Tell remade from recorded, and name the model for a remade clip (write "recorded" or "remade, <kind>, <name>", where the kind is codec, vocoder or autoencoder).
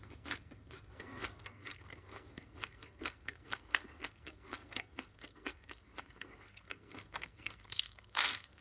remade, codec, SNAC